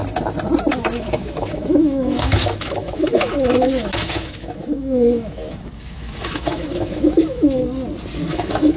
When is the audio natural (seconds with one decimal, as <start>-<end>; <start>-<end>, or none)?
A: 0.0-0.7; 7.6-8.2